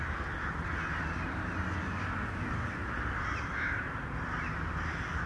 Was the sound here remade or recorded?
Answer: recorded